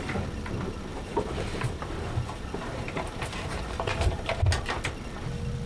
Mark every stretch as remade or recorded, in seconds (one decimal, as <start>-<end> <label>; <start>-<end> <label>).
0.0-0.9 recorded; 0.9-4.3 remade; 4.3-5.7 recorded